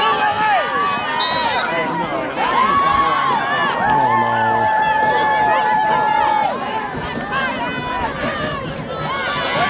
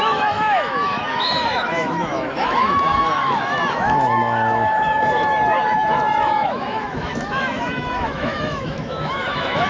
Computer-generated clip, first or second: second